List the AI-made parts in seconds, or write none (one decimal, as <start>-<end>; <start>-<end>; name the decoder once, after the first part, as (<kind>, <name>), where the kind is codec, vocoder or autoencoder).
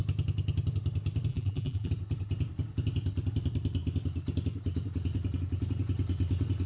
1.3-1.9 (vocoder, BigVGAN v2)